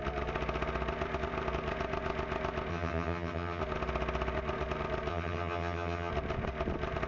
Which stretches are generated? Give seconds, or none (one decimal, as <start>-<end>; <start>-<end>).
2.7-3.6; 5.1-6.1